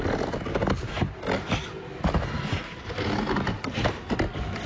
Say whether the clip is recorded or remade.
recorded